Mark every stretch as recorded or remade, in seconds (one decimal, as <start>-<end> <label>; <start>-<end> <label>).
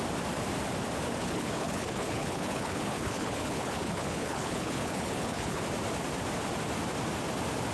0.0-1.2 recorded; 1.2-5.6 remade; 5.6-7.7 recorded